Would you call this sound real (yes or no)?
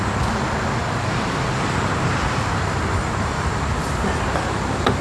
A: no